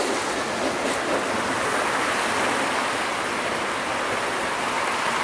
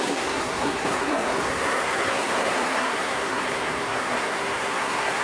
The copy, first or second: second